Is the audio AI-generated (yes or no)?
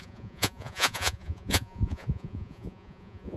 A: yes